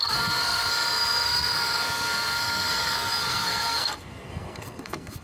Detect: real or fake fake